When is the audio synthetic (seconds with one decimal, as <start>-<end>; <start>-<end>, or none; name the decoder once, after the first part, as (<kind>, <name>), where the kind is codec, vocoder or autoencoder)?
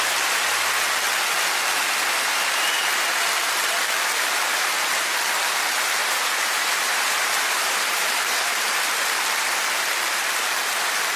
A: 6.0-9.0 (vocoder, BigVGAN v2)